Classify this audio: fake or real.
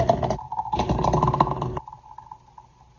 real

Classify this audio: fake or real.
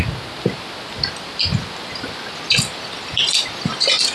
real